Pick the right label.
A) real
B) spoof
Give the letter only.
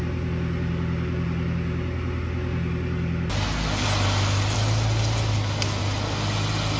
A